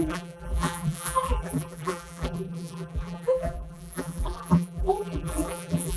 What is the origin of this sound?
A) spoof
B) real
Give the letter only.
A